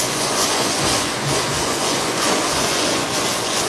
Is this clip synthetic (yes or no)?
yes